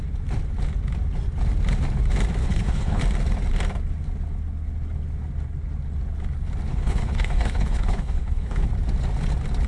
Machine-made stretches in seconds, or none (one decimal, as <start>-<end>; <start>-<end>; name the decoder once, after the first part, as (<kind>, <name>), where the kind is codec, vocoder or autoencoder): 2.4-3.0 (codec, HILCodec); 6.7-8.7